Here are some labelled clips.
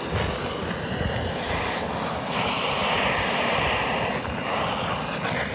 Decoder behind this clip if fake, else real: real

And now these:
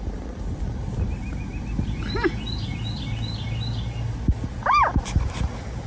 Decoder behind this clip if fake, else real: real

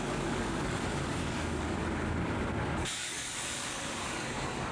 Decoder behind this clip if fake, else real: fake, codec, DAC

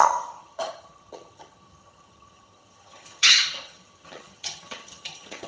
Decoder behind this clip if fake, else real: fake, vocoder, HiFi-GAN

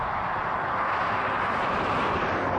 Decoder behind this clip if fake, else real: real